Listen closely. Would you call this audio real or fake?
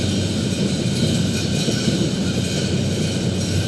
real